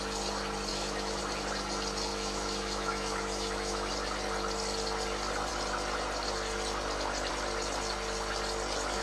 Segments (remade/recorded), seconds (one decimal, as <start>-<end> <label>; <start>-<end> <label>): 0.0-0.7 recorded; 0.7-1.2 remade; 1.2-2.1 recorded; 2.1-3.9 remade; 3.9-9.0 recorded

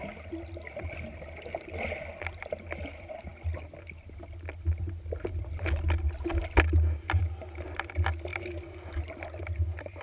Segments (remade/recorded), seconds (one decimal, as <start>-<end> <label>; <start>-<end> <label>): 0.0-10.0 recorded

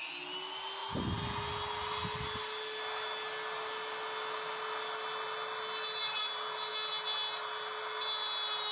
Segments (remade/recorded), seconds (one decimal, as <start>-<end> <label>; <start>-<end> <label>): 0.0-8.7 recorded

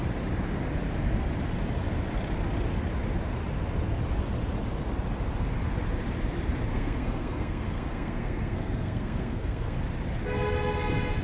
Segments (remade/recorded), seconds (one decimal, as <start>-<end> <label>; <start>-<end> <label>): 0.0-6.7 recorded; 6.7-9.8 remade; 9.8-11.2 recorded